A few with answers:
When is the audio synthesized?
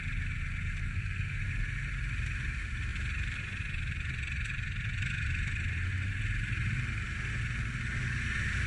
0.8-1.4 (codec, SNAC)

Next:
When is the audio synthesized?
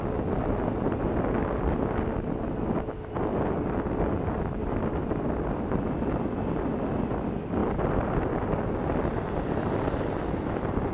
none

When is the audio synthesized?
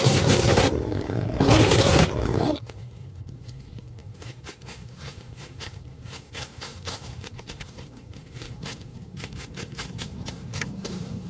0.0-11.3 (codec, SNAC)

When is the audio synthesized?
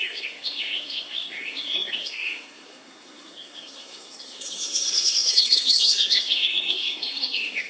0.0-7.7 (codec, SNAC)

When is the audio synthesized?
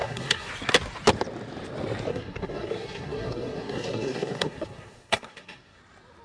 0.0-0.5 (codec, SNAC); 2.1-5.8